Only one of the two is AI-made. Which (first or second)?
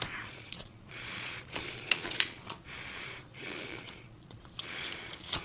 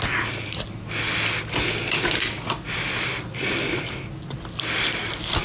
first